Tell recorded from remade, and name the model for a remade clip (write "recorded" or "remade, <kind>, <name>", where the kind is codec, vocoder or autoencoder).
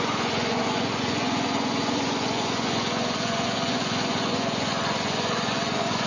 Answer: remade, vocoder, Vocos